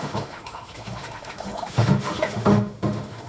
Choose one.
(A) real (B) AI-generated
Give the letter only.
B